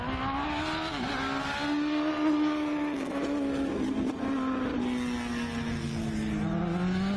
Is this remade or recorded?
recorded